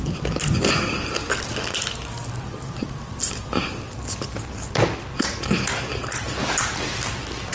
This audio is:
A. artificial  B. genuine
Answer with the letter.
B